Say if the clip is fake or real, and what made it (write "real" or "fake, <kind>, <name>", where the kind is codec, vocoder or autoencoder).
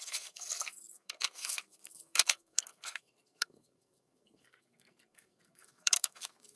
fake, codec, SNAC